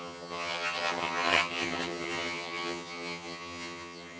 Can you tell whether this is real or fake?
fake